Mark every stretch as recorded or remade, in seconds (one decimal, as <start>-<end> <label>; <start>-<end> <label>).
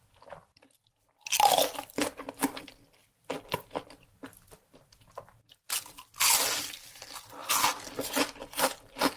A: 0.0-9.2 recorded